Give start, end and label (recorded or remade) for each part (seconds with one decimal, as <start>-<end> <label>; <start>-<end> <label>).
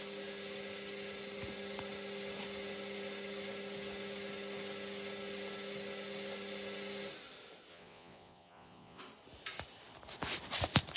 0.0-7.7 recorded; 7.7-9.0 remade; 9.0-11.0 recorded